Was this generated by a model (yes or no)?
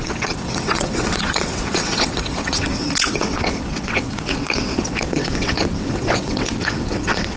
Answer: yes